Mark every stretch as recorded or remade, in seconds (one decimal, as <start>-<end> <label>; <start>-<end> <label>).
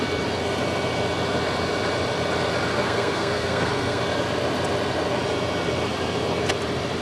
0.0-2.7 recorded; 2.7-4.0 remade; 4.0-7.0 recorded